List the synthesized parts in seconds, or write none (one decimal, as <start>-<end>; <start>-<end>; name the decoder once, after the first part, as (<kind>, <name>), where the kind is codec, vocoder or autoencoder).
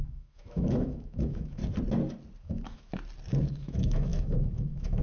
0.0-1.6 (autoencoder, DAC-VAE); 2.4-2.9; 3.4-5.0